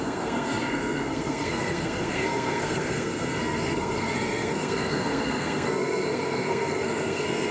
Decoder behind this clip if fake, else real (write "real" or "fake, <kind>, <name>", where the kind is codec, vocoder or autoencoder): fake, codec, SNAC